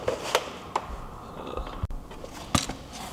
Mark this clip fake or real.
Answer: real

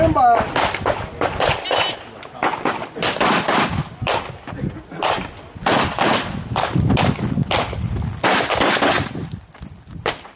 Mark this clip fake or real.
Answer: real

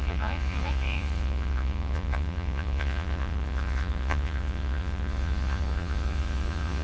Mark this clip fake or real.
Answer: fake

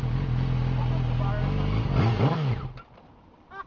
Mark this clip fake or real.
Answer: real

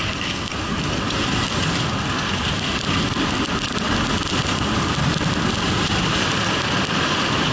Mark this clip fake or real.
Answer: fake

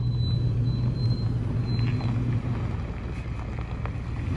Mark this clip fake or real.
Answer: real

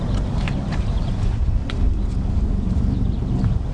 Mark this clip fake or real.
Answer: fake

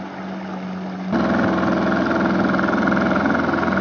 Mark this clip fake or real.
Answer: real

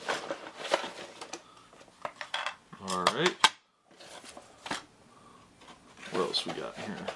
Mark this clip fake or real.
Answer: real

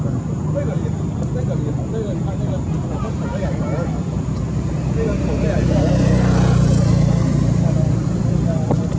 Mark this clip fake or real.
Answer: real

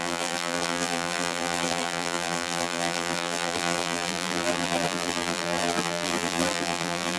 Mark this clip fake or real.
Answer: fake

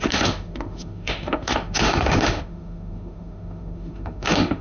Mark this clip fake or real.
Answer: fake